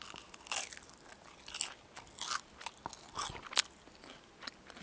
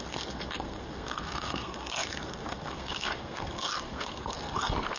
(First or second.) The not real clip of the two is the second